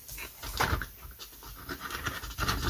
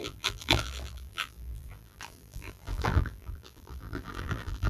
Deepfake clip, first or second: second